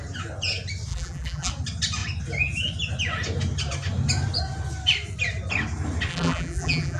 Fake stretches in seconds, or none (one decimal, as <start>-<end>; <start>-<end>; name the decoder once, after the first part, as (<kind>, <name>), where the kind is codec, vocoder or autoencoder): 0.9-1.5 (vocoder, BigVGAN v2); 6.1-7.0